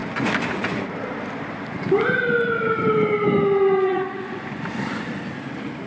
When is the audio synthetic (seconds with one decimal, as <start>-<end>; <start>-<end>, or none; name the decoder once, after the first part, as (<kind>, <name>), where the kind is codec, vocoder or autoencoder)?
3.9-4.7 (vocoder, Vocos)